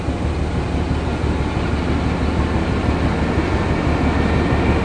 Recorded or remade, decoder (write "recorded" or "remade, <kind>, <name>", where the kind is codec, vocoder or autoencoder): recorded